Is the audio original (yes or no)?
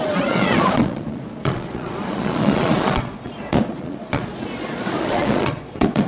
no